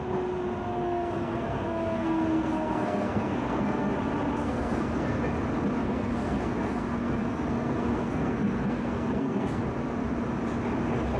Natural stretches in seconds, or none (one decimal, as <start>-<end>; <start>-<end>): 0.0-0.7; 3.9-4.4; 5.2-5.8; 9.6-11.2

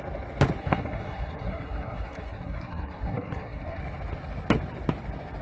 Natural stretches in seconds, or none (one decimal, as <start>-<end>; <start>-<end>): 0.0-0.6; 3.8-5.4

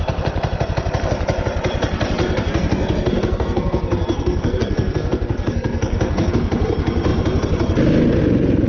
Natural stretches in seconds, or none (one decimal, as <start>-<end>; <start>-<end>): 0.0-2.2; 6.3-8.7

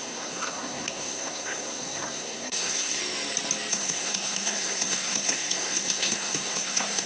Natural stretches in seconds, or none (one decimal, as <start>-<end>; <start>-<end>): 3.0-3.7